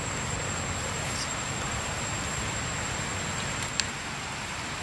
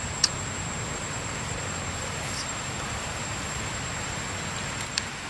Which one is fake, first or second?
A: second